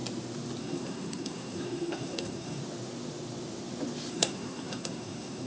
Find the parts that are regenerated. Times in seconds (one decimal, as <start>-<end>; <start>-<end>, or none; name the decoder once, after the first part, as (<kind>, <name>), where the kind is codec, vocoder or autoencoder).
0.6-2.6 (codec, SNAC); 4.1-5.5